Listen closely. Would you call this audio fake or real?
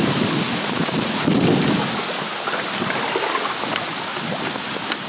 real